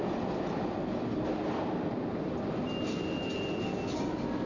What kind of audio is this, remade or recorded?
recorded